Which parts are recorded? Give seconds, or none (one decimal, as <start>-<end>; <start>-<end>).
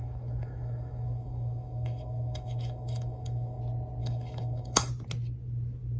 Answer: 3.6-4.0; 4.9-6.0